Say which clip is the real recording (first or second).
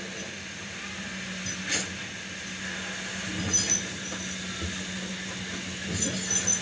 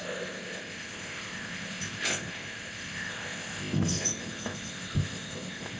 first